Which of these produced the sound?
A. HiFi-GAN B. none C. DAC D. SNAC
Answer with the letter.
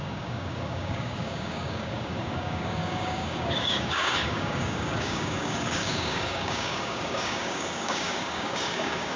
C